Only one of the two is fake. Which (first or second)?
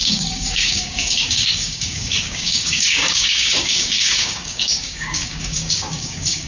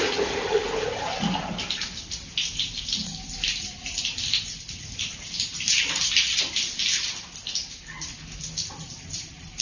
first